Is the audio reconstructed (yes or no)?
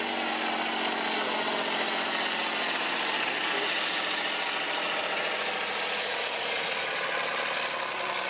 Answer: no